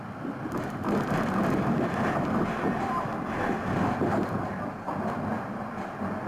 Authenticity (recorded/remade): recorded